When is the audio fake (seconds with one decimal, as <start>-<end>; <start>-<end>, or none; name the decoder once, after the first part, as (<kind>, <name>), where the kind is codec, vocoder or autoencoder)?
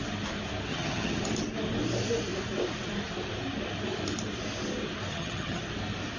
0.7-1.2 (vocoder, HiFi-GAN); 5.1-5.6